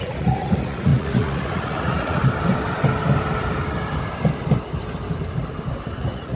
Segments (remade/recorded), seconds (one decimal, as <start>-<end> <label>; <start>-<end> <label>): 0.0-2.2 remade; 2.2-6.0 recorded; 6.0-6.4 remade